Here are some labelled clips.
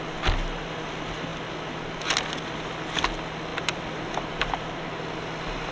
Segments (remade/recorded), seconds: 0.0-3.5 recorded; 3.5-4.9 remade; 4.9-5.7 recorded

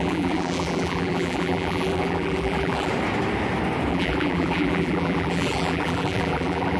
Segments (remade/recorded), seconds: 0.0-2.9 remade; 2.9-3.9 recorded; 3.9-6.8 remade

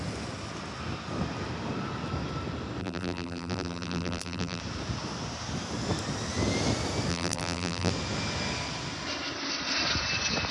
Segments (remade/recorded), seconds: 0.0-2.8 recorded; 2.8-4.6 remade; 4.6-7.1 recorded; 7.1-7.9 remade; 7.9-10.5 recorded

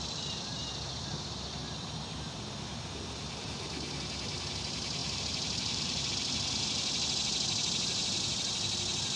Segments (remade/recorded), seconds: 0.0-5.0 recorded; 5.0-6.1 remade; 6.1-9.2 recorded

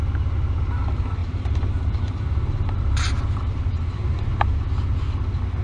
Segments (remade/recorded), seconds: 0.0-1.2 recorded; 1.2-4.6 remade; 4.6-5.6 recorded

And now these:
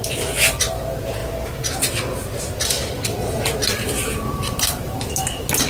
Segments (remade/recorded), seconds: 0.0-3.1 recorded; 3.1-5.1 remade; 5.1-5.7 recorded